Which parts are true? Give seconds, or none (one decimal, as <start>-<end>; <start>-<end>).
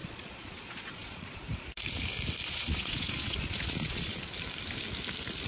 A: 1.4-2.4; 4.3-5.5